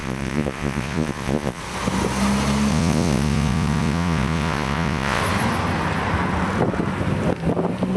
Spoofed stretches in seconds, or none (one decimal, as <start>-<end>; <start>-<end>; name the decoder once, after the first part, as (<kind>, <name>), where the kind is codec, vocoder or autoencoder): 0.0-1.6 (vocoder, Vocos); 2.7-5.2